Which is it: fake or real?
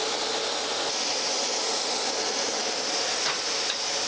real